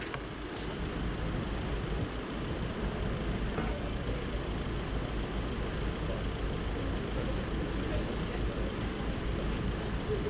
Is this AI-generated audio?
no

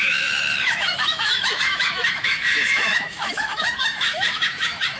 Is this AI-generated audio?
yes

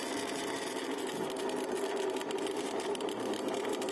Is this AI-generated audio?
no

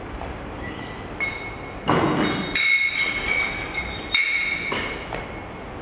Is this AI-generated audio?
no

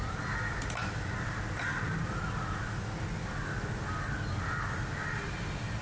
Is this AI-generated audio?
no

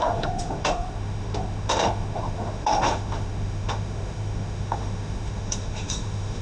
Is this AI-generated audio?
yes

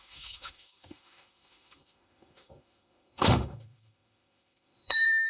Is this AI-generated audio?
yes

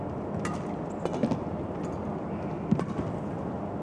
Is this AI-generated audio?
no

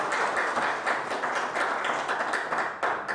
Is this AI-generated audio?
no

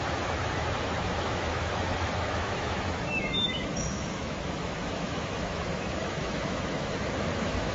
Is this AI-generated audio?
yes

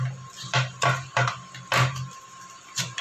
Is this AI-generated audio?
no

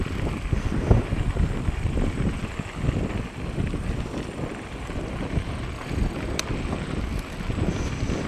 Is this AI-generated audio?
no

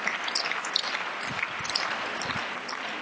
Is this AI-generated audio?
no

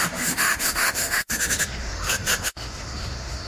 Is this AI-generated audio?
yes